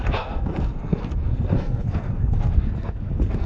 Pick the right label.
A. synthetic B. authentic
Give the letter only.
A